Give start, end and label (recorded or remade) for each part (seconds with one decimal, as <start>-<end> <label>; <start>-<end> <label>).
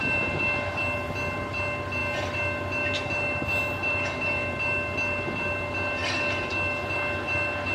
0.0-7.7 recorded